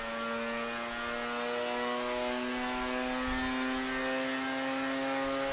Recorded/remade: recorded